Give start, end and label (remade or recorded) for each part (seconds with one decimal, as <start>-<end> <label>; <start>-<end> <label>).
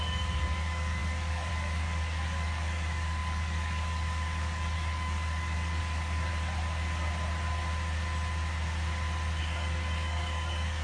0.0-6.3 remade; 6.3-9.4 recorded; 9.4-10.8 remade